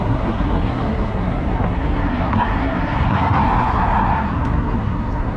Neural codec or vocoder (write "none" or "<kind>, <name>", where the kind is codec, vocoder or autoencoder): codec, SNAC